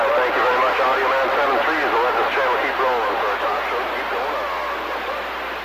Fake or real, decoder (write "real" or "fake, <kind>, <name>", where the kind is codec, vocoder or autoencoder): real